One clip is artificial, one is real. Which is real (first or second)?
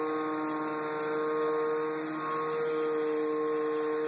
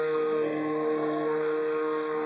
first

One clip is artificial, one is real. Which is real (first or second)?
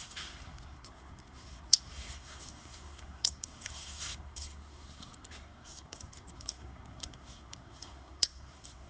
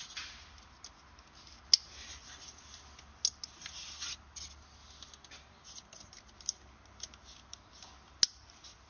second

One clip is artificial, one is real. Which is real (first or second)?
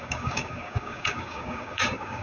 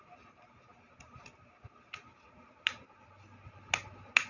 second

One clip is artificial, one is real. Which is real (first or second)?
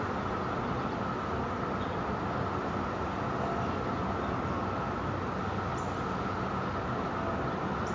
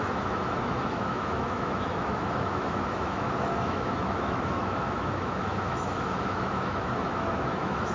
first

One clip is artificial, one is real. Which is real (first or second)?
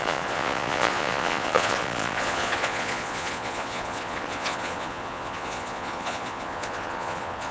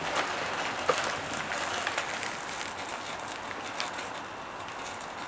second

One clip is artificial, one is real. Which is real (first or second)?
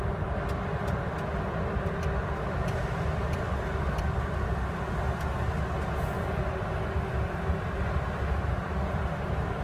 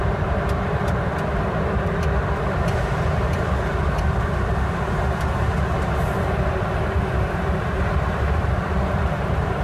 first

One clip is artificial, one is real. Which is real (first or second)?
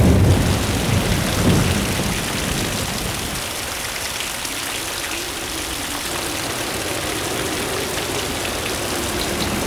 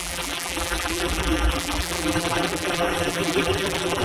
first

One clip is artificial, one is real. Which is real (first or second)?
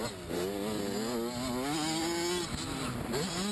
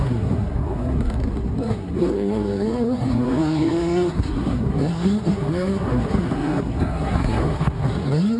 first